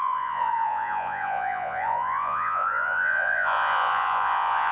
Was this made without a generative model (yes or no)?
no